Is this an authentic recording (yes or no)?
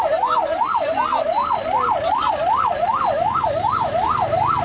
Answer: yes